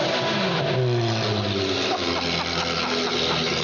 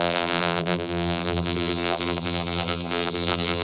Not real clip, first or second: second